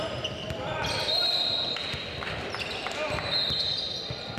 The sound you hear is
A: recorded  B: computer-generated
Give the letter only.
B